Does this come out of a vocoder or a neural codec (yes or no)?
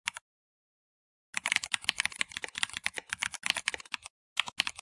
no